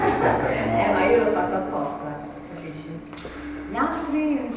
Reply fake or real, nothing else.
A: real